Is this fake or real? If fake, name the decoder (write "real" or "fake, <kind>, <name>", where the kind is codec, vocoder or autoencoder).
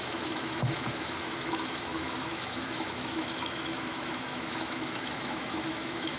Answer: fake, autoencoder, DAC-VAE